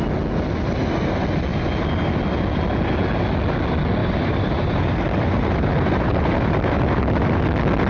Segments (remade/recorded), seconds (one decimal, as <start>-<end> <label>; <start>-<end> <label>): 0.0-4.0 recorded; 4.0-7.4 remade; 7.4-7.9 recorded